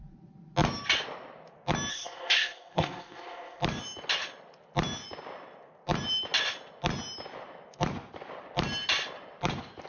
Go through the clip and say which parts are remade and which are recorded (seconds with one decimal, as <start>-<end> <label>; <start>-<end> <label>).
0.0-1.9 recorded; 1.9-3.6 remade; 3.6-9.9 recorded